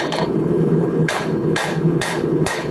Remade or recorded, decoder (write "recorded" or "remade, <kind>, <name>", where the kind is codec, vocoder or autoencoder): remade, codec, HILCodec